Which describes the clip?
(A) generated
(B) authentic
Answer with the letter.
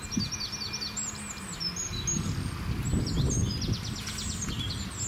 B